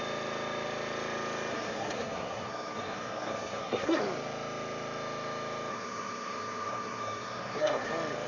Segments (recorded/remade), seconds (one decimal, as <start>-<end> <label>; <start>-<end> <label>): 0.0-1.5 recorded; 1.5-4.0 remade; 4.0-5.7 recorded; 5.7-7.9 remade; 7.9-8.3 recorded